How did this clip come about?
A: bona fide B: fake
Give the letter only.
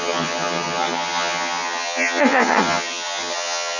B